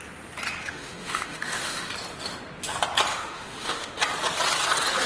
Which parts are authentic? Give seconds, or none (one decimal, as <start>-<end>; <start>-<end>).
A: 0.0-0.6; 1.9-3.1; 4.0-5.1

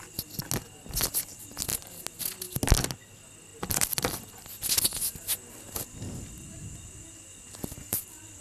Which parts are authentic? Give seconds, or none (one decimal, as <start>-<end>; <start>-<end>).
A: 0.0-8.4